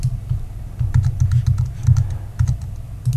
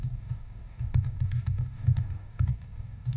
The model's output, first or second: second